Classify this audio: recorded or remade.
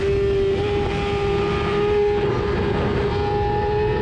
recorded